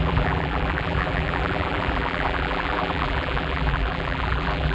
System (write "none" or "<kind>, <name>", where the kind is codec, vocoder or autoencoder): vocoder, BigVGAN v2